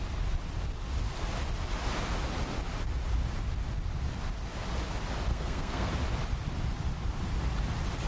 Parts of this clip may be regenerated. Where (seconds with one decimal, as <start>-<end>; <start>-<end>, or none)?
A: 5.3-5.9